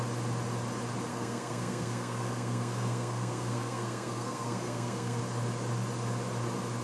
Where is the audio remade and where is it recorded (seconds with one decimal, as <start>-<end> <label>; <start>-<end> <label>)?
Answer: 0.0-1.1 recorded; 1.1-5.2 remade; 5.2-6.8 recorded